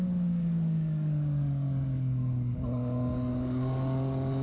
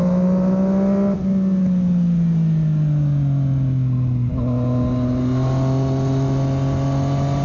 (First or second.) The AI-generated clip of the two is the first